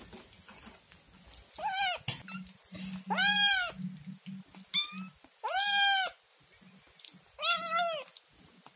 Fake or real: real